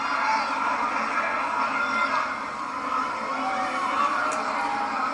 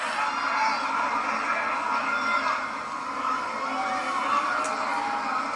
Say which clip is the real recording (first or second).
second